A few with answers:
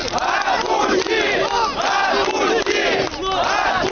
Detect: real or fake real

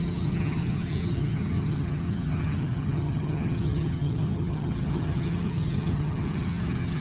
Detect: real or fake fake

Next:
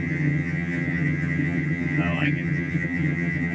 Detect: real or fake fake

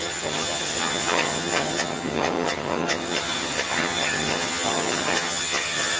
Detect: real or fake fake